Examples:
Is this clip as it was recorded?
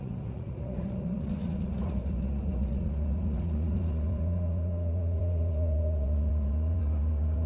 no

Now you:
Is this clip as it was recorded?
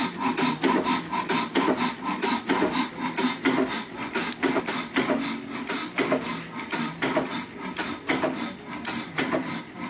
yes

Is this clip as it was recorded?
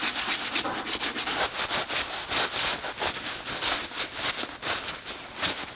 yes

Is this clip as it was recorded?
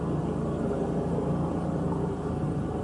yes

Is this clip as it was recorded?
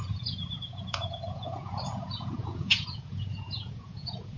no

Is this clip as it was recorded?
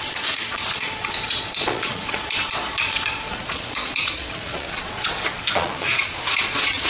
no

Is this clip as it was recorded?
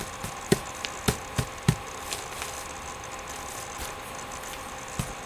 yes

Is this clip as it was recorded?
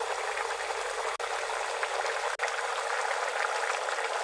yes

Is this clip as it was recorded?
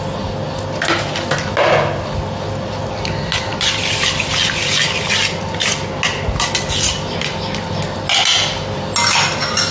yes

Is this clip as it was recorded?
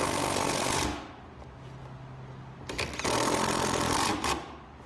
yes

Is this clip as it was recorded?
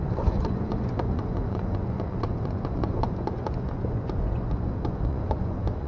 no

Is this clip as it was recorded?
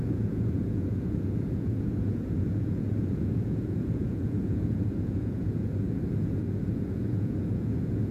no